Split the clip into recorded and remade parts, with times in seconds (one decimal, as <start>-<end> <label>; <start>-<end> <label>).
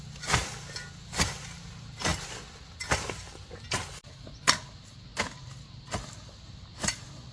0.0-7.3 recorded